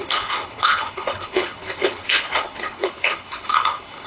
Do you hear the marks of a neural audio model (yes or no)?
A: yes